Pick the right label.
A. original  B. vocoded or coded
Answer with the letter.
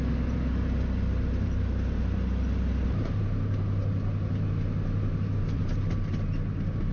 A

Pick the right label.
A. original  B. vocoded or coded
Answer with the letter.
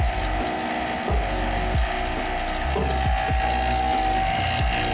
A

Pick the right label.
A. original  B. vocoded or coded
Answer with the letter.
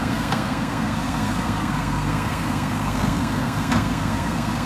B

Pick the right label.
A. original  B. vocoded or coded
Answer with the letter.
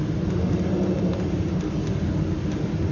A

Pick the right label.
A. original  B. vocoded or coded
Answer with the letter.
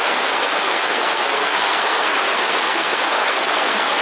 B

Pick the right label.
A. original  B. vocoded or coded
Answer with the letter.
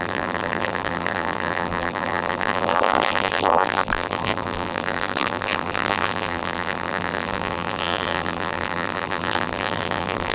B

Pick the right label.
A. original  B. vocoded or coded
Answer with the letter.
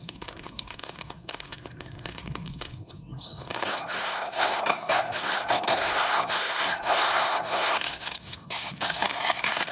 B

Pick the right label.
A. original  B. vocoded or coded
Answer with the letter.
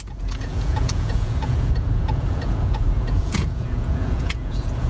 B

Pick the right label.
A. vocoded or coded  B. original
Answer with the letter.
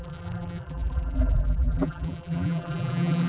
A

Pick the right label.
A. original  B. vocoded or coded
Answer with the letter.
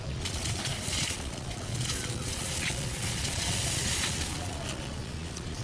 B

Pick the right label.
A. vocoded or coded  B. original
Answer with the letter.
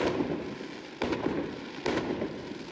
B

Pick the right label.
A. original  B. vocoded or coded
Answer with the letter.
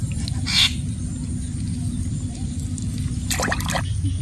A